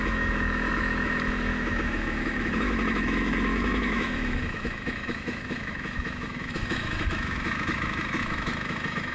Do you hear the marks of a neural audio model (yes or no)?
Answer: yes